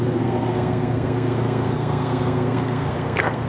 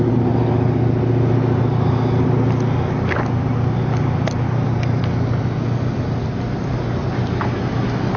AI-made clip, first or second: first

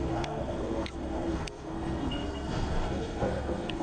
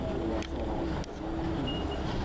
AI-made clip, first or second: first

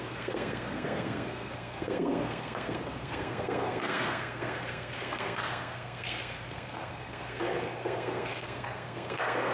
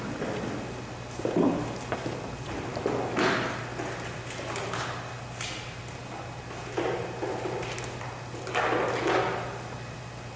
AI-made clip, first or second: first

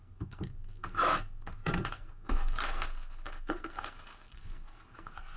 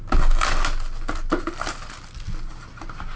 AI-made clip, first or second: first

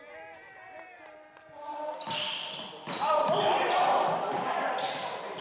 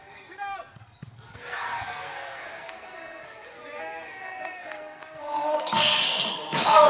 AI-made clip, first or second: second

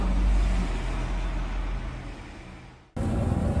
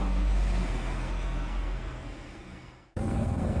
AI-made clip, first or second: second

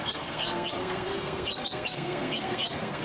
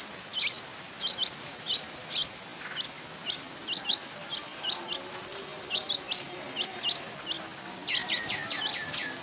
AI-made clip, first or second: first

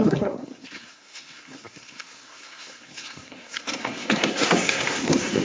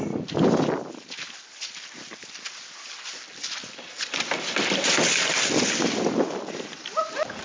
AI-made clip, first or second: first